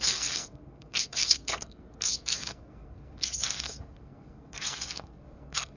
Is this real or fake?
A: fake